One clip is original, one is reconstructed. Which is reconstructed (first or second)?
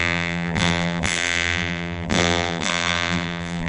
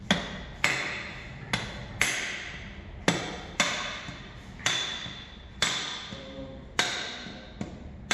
first